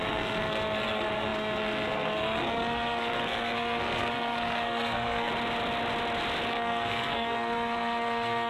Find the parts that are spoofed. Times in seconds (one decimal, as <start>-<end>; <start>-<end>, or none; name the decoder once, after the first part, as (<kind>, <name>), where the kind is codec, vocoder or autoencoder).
0.0-5.3 (codec, SNAC); 6.5-8.5